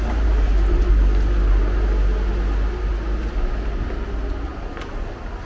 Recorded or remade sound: recorded